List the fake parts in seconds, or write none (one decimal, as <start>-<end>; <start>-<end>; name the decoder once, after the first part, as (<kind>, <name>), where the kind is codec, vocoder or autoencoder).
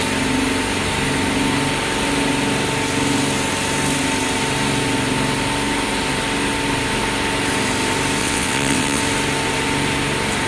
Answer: 8.2-9.0 (vocoder, WaveNeXt)